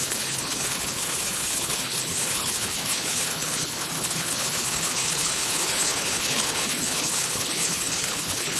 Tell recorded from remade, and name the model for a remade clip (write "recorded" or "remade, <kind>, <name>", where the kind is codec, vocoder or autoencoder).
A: remade, codec, HILCodec